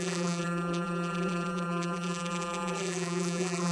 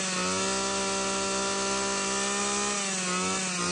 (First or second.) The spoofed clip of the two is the first